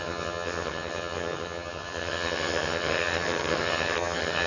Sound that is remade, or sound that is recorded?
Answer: remade